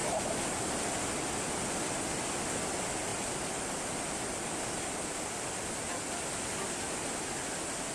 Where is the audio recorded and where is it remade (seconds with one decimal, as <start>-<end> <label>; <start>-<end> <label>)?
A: 0.0-7.9 recorded